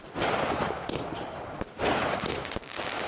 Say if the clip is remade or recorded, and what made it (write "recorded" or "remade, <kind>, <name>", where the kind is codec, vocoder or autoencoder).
recorded